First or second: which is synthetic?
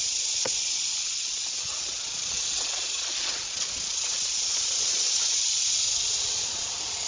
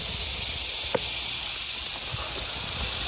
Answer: first